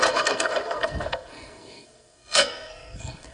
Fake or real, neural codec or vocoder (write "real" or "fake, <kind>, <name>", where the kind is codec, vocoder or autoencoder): fake, codec, SNAC